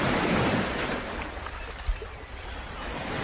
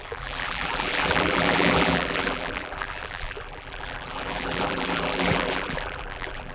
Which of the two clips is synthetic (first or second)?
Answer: second